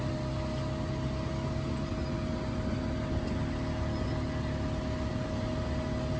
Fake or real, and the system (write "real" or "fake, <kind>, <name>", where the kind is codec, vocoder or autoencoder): real